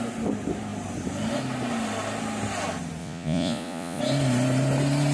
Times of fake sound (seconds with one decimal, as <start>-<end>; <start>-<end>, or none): 3.0-4.0